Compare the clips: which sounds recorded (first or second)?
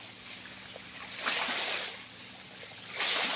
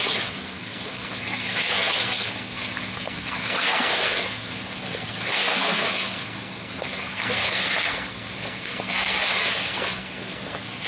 first